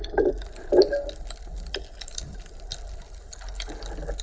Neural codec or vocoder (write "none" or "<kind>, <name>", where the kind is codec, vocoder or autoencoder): none